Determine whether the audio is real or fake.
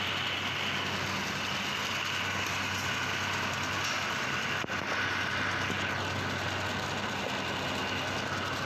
real